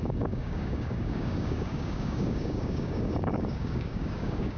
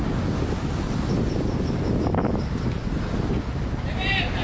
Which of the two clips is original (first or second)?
second